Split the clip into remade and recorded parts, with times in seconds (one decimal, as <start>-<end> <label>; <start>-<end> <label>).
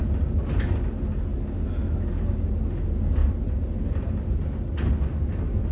0.0-3.2 recorded; 3.2-3.8 remade; 3.8-5.7 recorded